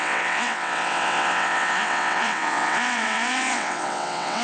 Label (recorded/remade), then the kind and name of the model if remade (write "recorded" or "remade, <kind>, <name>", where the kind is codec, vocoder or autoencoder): remade, vocoder, WaveNeXt